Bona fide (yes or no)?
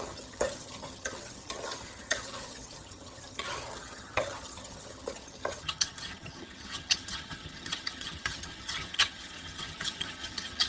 no